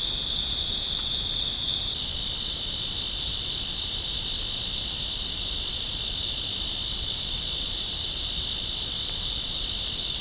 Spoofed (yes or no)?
no